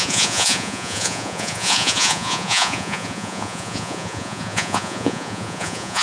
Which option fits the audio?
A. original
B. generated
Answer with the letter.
B